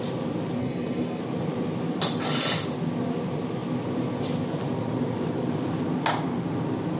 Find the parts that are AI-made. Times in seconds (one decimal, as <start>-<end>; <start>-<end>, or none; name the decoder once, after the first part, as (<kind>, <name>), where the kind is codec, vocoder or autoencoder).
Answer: 0.6-1.2 (codec, SNAC)